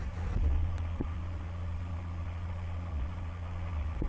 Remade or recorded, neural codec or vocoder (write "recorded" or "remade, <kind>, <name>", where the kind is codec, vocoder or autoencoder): remade, vocoder, Vocos